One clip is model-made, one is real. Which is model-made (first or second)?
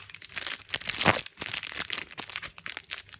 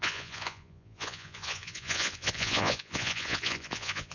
second